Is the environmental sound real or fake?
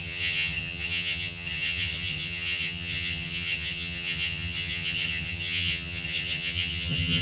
fake